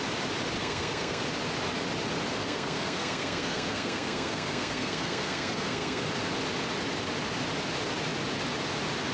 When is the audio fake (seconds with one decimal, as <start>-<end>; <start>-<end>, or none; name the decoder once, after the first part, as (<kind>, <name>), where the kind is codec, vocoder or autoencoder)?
0.6-1.2 (codec, SNAC); 2.4-6.1

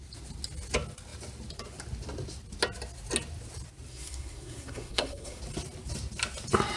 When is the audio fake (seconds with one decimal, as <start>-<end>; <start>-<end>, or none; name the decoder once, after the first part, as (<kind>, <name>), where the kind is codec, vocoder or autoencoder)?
3.9-5.4 (codec, SNAC)

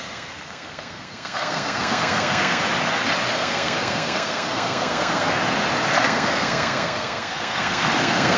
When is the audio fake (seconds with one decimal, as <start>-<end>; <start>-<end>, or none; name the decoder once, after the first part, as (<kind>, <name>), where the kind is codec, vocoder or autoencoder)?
0.0-2.6 (codec, SNAC); 3.3-5.4; 6.0-8.4

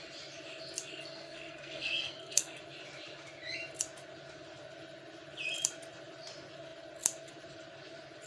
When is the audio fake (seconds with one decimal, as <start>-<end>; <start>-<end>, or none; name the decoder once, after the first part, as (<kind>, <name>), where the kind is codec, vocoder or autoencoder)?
0.9-2.6 (codec, SNAC)

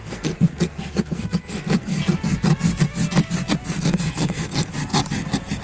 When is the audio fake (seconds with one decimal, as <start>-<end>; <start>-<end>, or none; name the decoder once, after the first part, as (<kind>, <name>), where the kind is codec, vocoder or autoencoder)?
0.0-2.0 (codec, SNAC); 3.8-4.7